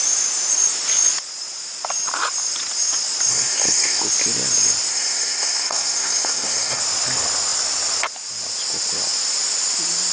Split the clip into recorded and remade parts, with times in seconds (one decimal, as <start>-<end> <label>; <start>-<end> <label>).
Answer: 0.0-3.3 recorded; 3.3-4.0 remade; 4.0-4.9 recorded; 4.9-6.8 remade; 6.8-10.1 recorded